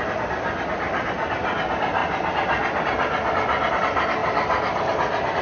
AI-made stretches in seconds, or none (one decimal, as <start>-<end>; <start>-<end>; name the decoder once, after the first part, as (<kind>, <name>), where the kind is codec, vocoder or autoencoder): none